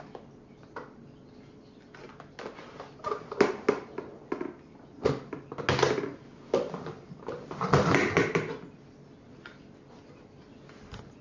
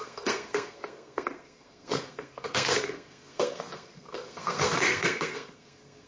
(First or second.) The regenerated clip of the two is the second